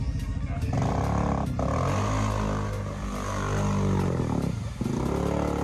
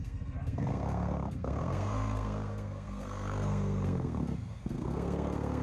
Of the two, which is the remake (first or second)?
second